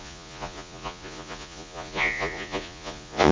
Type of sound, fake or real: fake